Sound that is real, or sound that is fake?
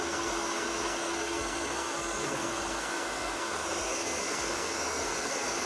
fake